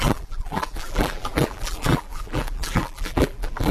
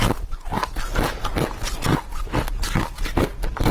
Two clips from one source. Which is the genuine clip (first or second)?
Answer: second